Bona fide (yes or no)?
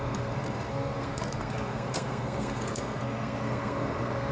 no